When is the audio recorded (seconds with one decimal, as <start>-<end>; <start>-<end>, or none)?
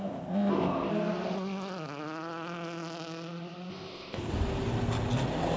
0.9-3.7; 4.3-5.6